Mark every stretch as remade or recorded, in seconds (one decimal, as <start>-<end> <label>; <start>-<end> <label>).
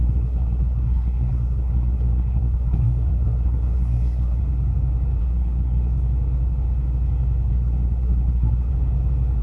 0.0-4.4 remade; 4.4-5.2 recorded; 5.2-5.9 remade; 5.9-7.5 recorded; 7.5-8.7 remade; 8.7-9.4 recorded